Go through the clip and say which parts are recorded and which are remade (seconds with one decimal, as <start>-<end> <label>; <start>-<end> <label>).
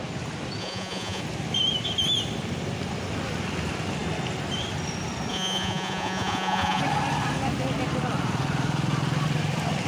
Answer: 0.0-0.6 recorded; 0.6-1.2 remade; 1.2-5.3 recorded; 5.3-6.8 remade; 6.8-9.9 recorded